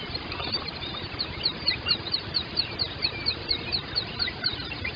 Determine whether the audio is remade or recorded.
recorded